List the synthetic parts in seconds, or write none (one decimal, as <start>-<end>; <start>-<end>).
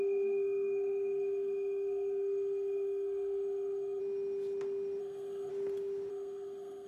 0.0-4.0; 5.0-5.5; 6.1-6.9